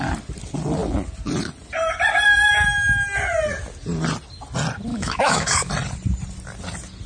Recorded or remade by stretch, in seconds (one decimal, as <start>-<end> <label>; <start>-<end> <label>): 0.0-4.9 recorded; 4.9-5.7 remade; 5.7-7.1 recorded